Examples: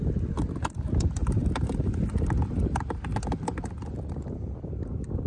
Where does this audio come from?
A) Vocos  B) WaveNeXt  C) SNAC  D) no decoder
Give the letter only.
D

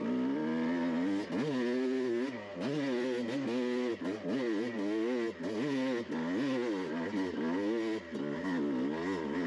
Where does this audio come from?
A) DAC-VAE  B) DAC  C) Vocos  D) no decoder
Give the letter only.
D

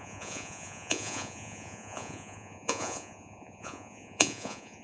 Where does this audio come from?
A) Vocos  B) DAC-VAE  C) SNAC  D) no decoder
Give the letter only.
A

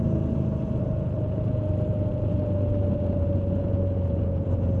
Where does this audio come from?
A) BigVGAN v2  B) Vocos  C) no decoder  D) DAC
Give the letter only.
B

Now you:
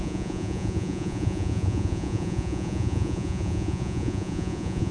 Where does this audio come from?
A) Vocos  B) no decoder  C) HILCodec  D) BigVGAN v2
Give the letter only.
A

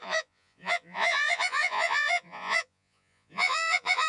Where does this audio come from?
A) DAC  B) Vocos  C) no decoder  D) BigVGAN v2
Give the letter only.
B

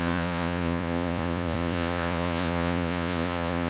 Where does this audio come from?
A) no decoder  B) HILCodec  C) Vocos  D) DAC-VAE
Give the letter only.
C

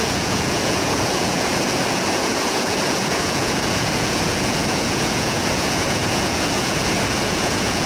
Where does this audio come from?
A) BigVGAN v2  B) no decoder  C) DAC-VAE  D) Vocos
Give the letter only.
D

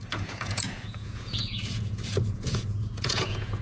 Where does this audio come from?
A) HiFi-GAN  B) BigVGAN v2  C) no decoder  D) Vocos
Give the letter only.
D